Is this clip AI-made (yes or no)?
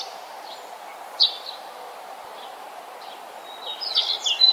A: no